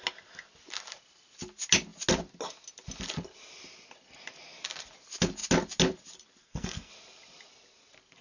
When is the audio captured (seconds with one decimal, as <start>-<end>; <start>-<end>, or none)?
0.0-6.4; 6.9-8.2